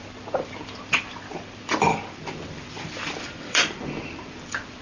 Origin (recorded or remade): remade